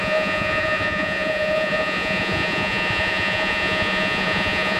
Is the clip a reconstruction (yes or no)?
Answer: yes